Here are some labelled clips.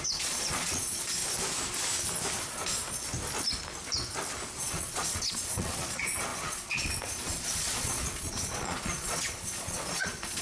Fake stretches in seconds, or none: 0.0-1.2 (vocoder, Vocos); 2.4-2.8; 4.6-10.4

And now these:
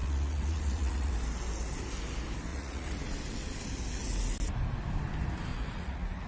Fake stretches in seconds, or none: 0.0-1.1 (vocoder, Vocos); 2.5-3.1; 5.5-6.3

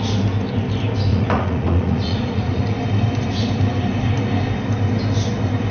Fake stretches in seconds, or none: 1.1-2.6 (vocoder, Vocos)